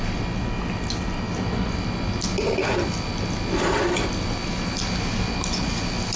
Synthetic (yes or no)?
no